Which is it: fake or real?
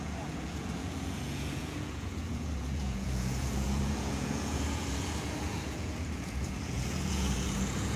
fake